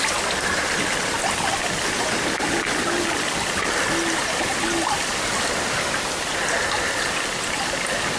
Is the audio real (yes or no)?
yes